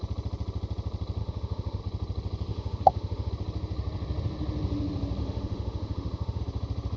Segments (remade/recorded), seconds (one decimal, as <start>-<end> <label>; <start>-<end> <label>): 0.0-1.2 recorded; 1.2-1.8 remade; 1.8-2.5 recorded; 2.5-3.3 remade; 3.3-5.2 recorded; 5.2-6.4 remade; 6.4-7.0 recorded